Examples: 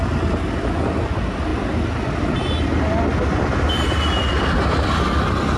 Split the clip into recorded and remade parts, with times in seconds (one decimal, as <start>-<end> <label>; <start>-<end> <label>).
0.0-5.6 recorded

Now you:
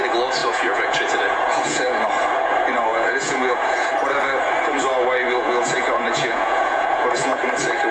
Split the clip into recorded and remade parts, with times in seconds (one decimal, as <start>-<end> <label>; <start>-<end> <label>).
0.0-0.4 recorded; 0.4-2.0 remade; 2.0-2.9 recorded; 2.9-3.9 remade; 3.9-5.4 recorded; 5.4-7.4 remade; 7.4-7.9 recorded

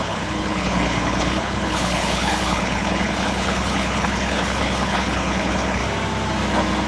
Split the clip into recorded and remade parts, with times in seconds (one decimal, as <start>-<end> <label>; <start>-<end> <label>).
0.0-5.8 remade; 5.8-6.9 recorded